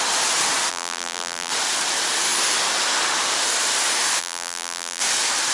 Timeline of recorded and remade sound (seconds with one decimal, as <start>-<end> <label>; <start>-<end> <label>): 0.0-0.7 recorded; 0.7-1.5 remade; 1.5-4.2 recorded; 4.2-5.0 remade; 5.0-5.5 recorded